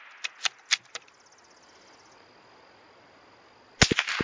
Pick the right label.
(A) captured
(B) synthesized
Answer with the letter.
A